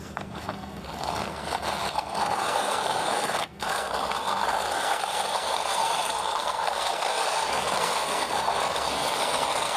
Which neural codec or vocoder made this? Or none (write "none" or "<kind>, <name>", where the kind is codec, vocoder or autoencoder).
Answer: codec, SNAC